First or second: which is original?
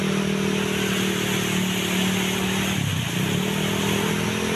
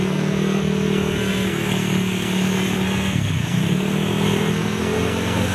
first